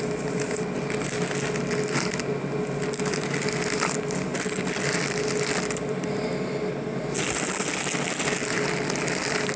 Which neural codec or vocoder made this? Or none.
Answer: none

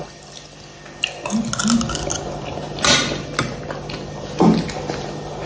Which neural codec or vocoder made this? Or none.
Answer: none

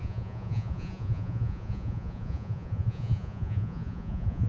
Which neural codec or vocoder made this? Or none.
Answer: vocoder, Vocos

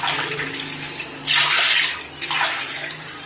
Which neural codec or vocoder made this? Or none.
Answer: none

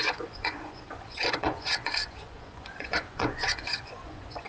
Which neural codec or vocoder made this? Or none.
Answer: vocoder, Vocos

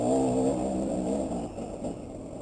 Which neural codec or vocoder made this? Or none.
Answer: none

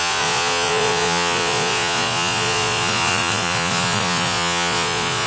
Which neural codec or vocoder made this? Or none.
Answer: vocoder, Vocos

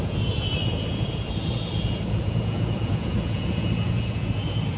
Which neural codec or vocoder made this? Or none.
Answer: vocoder, Vocos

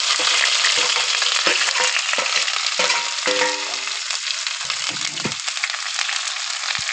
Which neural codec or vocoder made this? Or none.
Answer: none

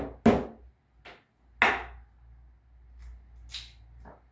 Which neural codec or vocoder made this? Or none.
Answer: none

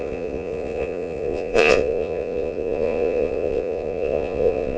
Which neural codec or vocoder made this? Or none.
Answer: vocoder, Vocos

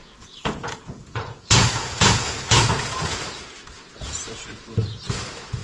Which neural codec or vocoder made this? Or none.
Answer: vocoder, Vocos